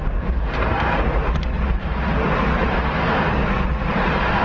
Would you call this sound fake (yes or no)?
no